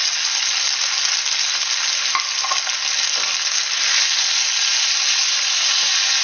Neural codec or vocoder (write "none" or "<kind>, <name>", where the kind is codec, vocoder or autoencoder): none